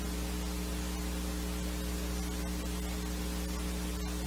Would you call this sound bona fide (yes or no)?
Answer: yes